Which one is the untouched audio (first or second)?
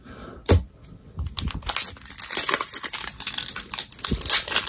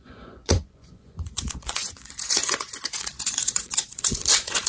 first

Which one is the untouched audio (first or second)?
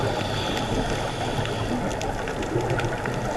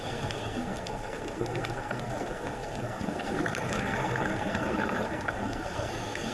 first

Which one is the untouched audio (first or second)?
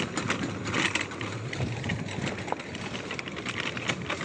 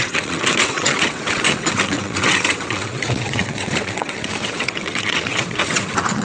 first